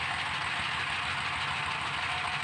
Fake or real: real